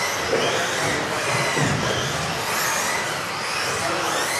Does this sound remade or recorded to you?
recorded